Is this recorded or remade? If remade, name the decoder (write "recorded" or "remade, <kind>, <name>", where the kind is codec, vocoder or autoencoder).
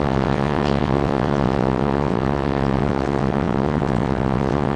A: remade, vocoder, WaveNeXt